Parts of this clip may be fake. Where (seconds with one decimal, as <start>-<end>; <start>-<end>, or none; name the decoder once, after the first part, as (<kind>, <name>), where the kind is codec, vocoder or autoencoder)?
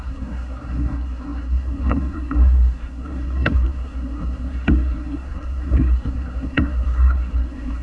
0.0-7.8 (codec, SNAC)